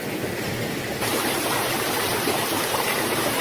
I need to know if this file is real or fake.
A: fake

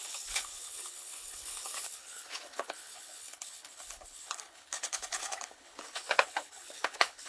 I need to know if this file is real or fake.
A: fake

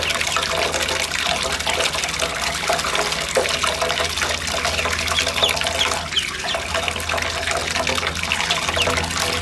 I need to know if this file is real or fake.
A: real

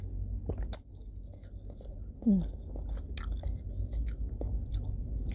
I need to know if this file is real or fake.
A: real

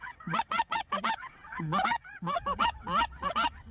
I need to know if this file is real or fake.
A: fake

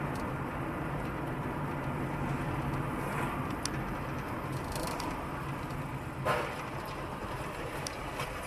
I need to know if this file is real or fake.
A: real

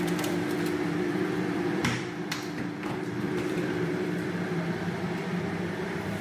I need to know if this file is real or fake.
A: fake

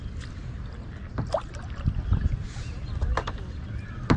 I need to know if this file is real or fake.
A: real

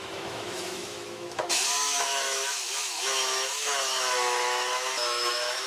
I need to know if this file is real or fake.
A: fake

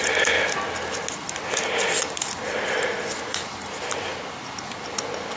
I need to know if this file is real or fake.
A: real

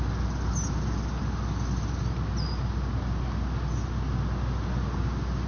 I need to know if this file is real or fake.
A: real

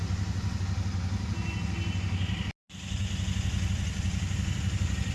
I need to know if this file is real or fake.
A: real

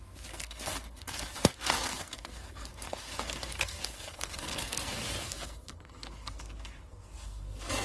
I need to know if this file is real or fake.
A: fake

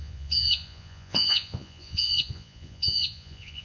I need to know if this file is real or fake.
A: fake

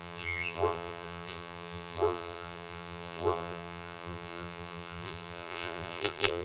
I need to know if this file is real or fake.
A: fake